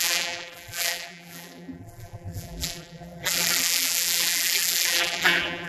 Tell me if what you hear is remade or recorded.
remade